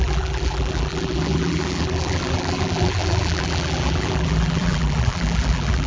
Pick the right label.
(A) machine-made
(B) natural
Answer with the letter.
A